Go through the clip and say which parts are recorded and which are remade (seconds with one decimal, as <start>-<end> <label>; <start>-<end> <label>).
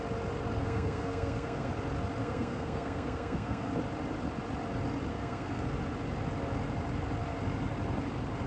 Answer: 0.0-0.6 recorded; 0.6-1.7 remade; 1.7-2.2 recorded; 2.2-3.7 remade; 3.7-5.1 recorded; 5.1-5.6 remade; 5.6-8.5 recorded